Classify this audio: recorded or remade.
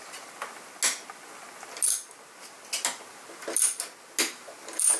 recorded